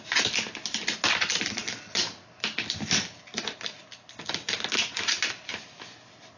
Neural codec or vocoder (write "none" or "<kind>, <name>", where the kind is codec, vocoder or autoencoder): none